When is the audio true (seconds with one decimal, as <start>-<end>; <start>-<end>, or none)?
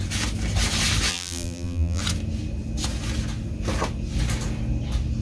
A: 0.0-1.1; 2.0-5.2